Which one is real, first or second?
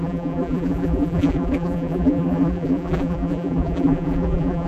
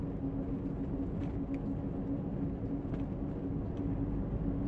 second